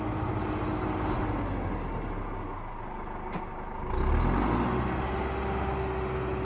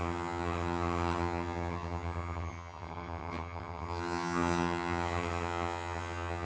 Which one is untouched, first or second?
first